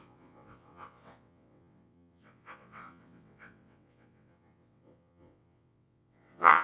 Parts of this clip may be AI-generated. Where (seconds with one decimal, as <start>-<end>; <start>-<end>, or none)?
0.0-6.6